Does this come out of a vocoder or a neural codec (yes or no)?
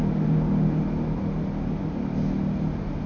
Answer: no